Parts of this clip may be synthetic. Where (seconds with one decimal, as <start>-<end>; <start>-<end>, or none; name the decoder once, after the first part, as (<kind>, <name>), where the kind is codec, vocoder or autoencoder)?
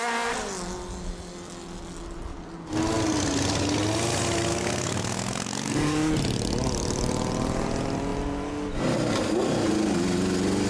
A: 4.5-6.1 (codec, DAC)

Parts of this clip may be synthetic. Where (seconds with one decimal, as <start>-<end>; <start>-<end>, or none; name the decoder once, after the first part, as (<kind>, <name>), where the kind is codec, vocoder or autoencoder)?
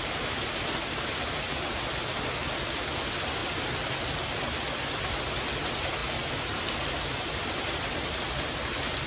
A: none